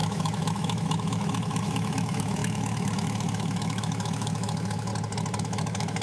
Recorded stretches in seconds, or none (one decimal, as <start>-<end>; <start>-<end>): 4.9-5.4